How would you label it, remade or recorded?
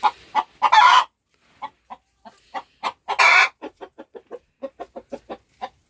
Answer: recorded